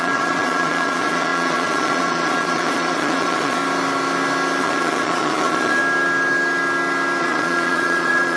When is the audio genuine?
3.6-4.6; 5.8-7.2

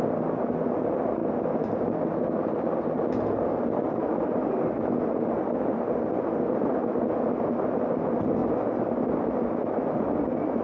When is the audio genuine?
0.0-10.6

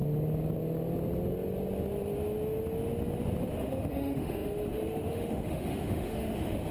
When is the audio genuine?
0.0-3.5

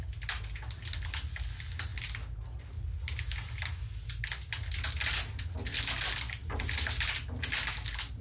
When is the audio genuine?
0.0-8.2